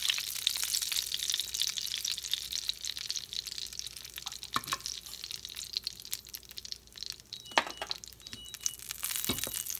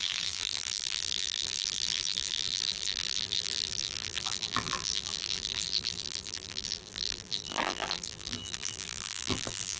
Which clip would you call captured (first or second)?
first